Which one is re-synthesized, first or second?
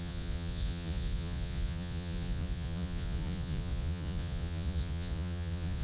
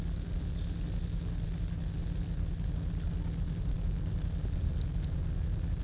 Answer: first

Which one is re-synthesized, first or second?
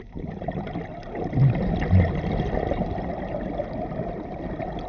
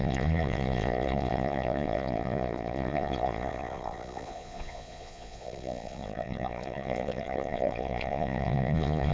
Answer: second